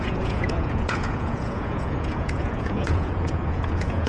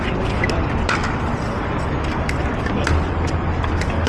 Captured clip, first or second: second